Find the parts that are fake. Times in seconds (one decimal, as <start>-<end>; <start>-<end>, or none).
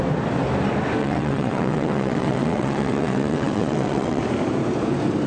1.0-4.2